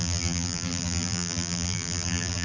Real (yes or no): no